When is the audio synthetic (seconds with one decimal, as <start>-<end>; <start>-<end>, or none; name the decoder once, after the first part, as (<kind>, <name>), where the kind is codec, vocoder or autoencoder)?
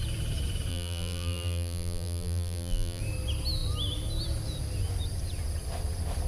0.7-3.0 (vocoder, BigVGAN v2)